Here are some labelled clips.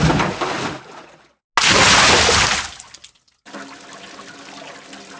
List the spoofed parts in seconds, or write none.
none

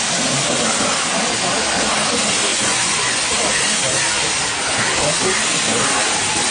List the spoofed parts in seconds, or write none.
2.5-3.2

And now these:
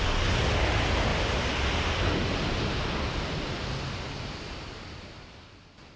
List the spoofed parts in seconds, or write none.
none

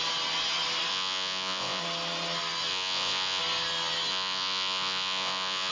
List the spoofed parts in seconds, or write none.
0.9-1.8; 2.7-3.4; 4.1-5.7